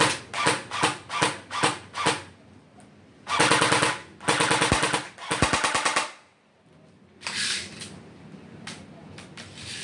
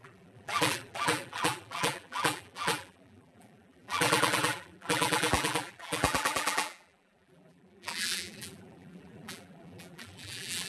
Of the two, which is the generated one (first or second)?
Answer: second